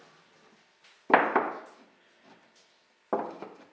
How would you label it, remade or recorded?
recorded